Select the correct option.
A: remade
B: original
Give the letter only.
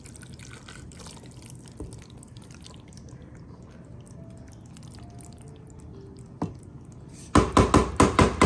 B